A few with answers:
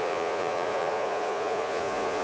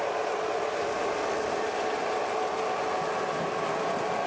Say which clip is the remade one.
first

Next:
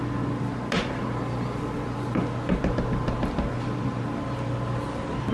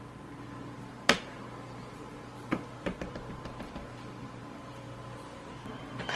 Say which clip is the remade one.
second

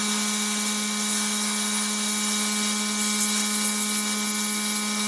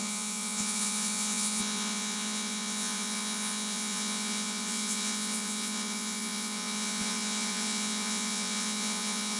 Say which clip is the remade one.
second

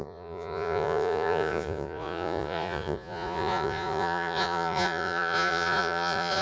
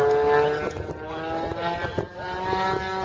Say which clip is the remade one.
first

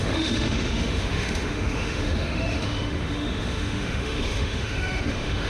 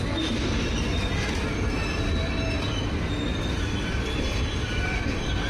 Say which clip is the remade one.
first